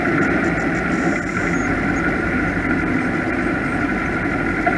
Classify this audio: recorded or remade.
recorded